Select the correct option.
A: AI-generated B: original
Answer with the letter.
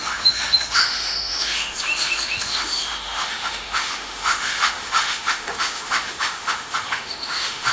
A